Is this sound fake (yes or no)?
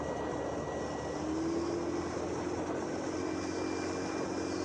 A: no